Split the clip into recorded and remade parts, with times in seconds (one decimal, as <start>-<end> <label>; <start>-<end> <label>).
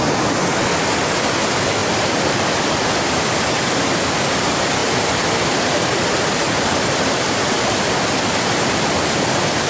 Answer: 0.0-1.8 recorded; 1.8-2.6 remade; 2.6-4.8 recorded; 4.8-9.7 remade